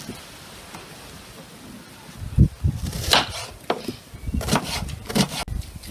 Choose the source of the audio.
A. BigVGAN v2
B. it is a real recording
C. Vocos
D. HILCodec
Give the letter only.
B